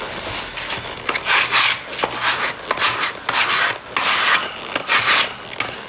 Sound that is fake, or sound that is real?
real